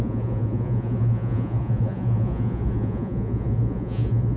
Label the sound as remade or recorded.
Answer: remade